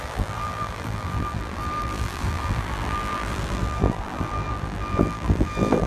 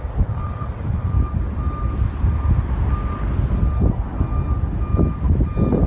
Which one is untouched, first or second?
second